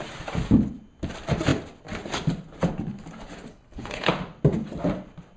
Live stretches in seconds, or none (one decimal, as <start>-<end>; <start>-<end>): 0.0-3.5; 4.1-5.4